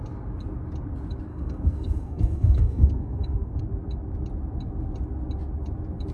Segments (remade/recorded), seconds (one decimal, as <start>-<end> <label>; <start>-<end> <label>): 0.0-1.3 recorded; 1.3-3.6 remade; 3.6-6.1 recorded